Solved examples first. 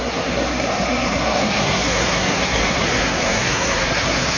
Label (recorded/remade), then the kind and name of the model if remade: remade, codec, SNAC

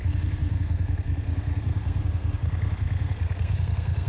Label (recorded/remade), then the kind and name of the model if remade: remade, codec, SNAC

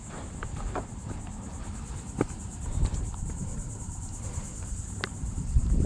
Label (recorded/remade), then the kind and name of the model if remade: remade, vocoder, BigVGAN v2